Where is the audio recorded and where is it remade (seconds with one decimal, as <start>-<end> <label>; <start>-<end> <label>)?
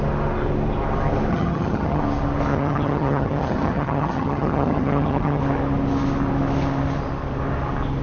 0.0-1.3 recorded; 1.3-2.0 remade; 2.0-2.5 recorded; 2.5-5.4 remade; 5.4-8.0 recorded